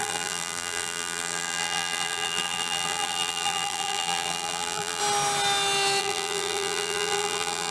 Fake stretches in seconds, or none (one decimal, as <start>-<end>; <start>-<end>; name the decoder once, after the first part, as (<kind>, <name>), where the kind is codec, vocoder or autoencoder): 0.0-5.0 (vocoder, BigVGAN v2); 6.0-7.7